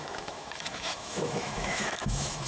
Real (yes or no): no